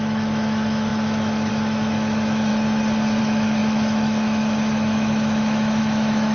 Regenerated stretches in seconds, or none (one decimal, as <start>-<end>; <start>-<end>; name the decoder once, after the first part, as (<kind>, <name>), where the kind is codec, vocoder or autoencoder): 0.0-2.5 (autoencoder, DAC-VAE); 3.2-6.3